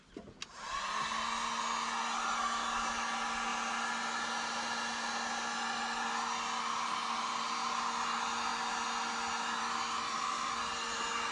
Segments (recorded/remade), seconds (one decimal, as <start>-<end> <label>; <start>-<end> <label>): 0.0-11.3 recorded